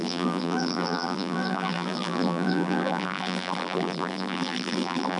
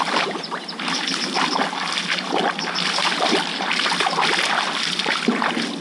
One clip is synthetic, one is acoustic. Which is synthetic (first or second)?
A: first